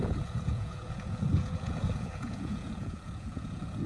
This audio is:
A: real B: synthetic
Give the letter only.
B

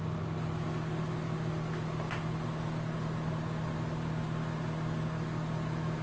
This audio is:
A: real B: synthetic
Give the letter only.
A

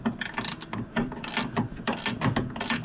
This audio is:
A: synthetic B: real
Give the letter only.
B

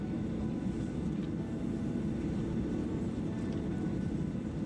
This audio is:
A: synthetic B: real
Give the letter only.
B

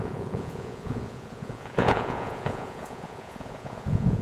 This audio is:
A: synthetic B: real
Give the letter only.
A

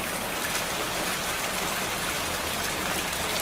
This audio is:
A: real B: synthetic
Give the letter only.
A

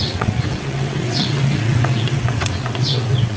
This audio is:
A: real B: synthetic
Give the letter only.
B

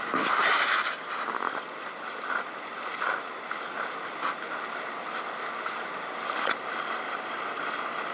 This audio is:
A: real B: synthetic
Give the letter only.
A